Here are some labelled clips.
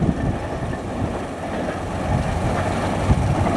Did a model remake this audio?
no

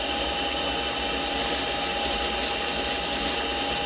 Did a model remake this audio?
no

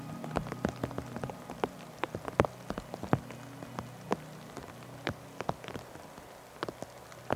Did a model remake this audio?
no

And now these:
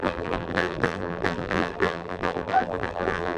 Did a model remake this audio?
yes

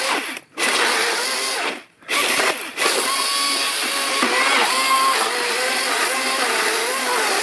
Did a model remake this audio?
no